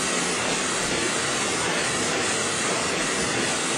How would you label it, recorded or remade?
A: recorded